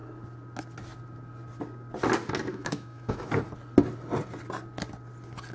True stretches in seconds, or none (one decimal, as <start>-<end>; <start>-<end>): 0.0-2.5; 3.3-5.5